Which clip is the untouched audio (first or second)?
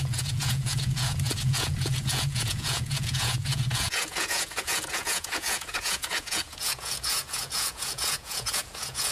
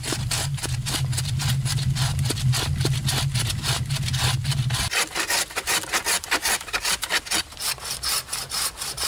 second